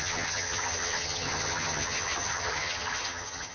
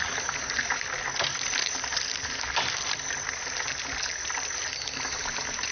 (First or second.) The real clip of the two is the second